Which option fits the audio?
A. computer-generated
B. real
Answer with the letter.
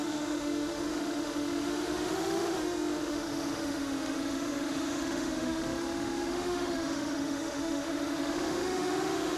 A